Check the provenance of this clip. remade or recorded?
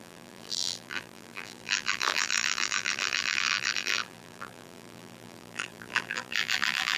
remade